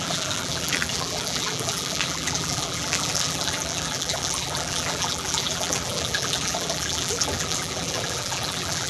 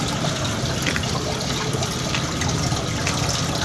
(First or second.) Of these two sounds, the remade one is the first